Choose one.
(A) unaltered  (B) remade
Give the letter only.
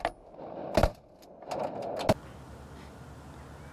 A